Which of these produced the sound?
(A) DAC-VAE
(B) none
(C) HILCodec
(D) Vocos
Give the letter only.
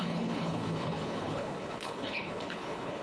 C